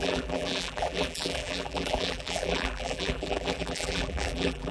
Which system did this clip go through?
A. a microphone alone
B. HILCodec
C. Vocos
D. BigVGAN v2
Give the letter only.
D